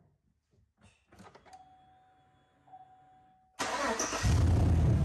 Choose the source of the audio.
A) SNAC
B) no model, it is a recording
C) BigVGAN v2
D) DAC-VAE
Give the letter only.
B